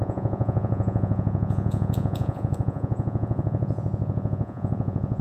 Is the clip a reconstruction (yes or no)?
yes